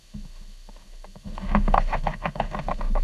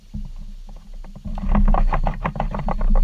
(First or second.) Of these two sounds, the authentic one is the second